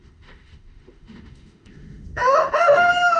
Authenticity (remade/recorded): remade